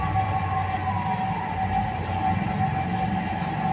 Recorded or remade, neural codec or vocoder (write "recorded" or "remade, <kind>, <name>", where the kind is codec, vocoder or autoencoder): recorded